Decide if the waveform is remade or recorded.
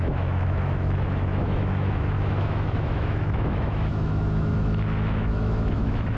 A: remade